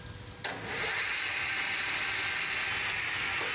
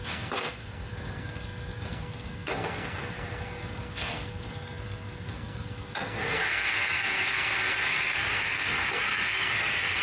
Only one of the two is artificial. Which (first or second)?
second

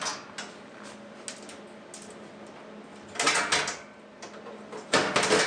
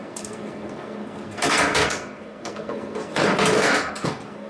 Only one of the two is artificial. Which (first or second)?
second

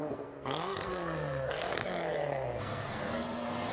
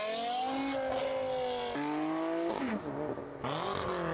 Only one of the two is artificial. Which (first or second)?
first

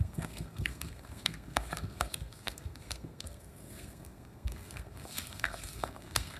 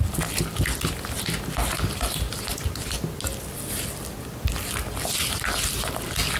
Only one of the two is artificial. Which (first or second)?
first